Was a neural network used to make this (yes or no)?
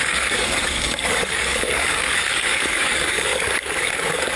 yes